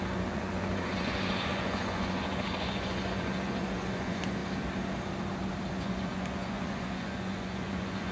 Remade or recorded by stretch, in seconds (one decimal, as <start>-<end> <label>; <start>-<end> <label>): 0.0-4.4 remade; 4.4-5.7 recorded; 5.7-8.1 remade